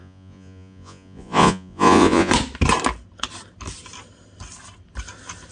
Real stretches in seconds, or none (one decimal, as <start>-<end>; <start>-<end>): 2.3-5.5